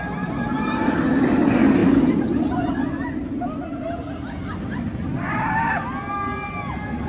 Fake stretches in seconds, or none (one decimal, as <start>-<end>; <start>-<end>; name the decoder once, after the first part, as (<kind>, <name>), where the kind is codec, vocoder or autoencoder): none